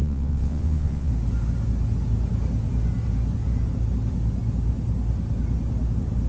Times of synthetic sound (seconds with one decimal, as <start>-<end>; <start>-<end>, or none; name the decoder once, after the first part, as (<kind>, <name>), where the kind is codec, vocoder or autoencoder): 0.0-1.1 (vocoder, Vocos)